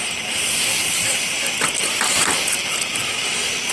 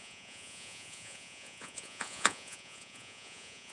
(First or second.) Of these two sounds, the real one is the first